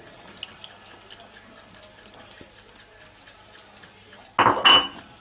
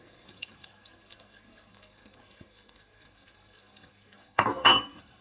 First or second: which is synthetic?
second